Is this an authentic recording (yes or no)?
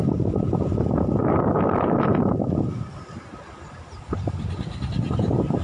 yes